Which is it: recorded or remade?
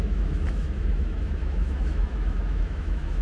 remade